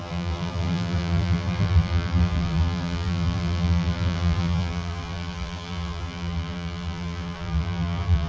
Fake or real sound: fake